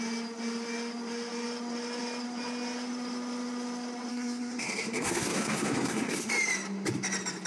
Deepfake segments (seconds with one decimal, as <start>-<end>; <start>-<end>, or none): 4.1-6.3